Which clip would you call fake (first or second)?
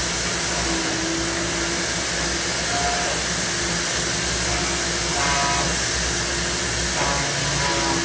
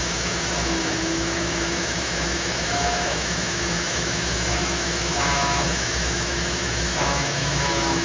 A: second